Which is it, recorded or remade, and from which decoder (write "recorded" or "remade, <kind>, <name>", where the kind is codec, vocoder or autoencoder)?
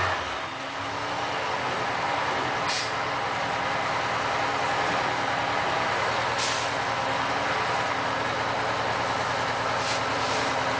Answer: recorded